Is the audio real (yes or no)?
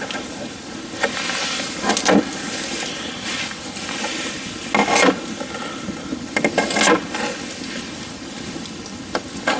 yes